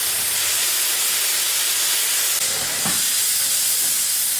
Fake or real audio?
real